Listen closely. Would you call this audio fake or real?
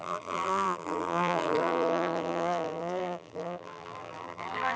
fake